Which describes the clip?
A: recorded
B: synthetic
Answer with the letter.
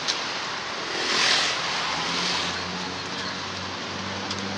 A